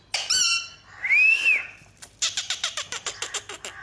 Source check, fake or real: real